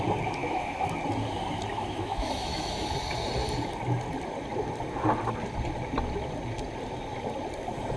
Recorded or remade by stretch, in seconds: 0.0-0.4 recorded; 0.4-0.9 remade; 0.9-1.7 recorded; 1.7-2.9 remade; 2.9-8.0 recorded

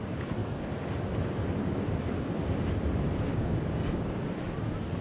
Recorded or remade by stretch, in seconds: 0.0-3.3 recorded; 3.3-4.2 remade; 4.2-5.0 recorded

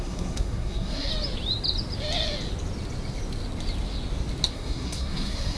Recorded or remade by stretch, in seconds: 0.0-1.1 remade; 1.1-4.5 recorded; 4.5-5.6 remade

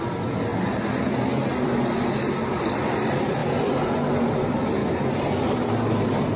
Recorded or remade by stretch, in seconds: 0.0-0.5 remade; 0.5-1.0 recorded; 1.0-3.4 remade; 3.4-4.3 recorded; 4.3-4.8 remade; 4.8-6.4 recorded

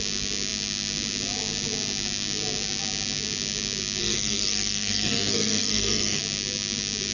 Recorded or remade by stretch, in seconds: 0.0-4.0 recorded; 4.0-6.2 remade; 6.2-7.1 recorded

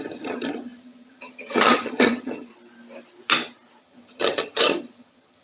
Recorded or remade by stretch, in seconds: 0.0-2.5 remade; 2.5-3.8 recorded; 3.8-5.4 remade